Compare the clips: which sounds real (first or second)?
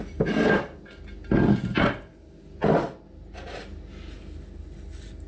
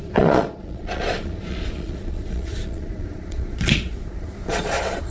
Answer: first